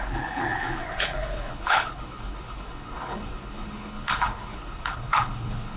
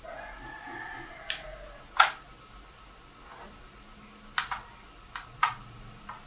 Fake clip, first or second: first